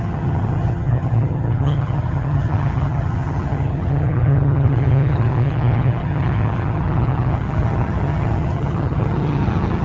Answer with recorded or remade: remade